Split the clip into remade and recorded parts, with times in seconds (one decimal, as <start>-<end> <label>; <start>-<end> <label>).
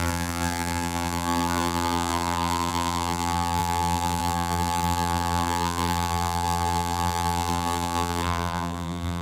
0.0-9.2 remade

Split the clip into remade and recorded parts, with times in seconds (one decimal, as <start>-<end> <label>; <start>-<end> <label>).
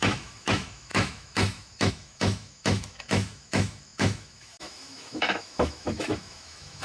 0.0-6.8 remade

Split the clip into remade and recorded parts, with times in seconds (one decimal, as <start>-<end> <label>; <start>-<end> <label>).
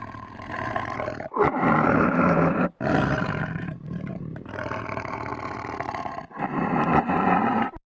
0.0-5.3 remade; 5.3-6.5 recorded; 6.5-7.9 remade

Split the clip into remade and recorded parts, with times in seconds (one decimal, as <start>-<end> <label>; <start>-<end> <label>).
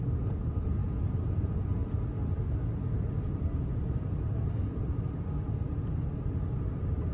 0.0-7.1 recorded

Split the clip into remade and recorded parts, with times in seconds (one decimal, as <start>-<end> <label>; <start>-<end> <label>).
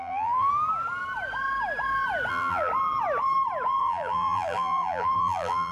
0.0-0.5 remade; 0.5-2.3 recorded; 2.3-2.7 remade; 2.7-3.8 recorded; 3.8-5.7 remade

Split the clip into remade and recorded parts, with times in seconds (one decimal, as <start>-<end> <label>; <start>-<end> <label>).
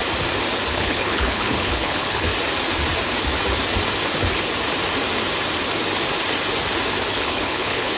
0.0-0.7 recorded; 0.7-2.3 remade; 2.3-7.1 recorded; 7.1-8.0 remade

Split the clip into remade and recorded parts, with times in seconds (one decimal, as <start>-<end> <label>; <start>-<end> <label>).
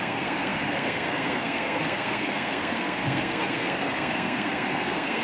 0.0-5.2 remade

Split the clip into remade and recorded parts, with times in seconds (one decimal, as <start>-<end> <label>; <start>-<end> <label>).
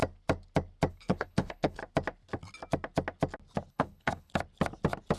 0.0-0.9 recorded; 0.9-1.8 remade; 1.8-3.7 recorded; 3.7-4.3 remade; 4.3-5.2 recorded